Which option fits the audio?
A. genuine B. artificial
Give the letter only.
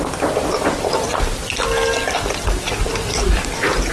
A